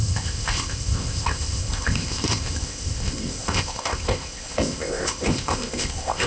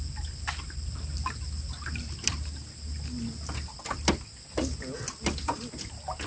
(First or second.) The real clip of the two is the second